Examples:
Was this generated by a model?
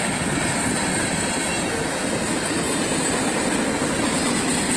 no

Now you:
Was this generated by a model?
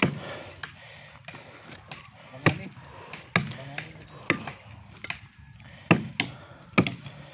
no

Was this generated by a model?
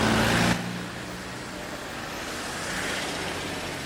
no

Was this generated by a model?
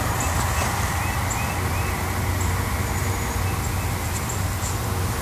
no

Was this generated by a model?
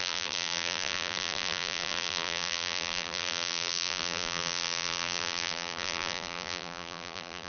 yes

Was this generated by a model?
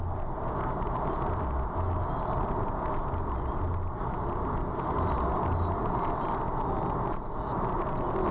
no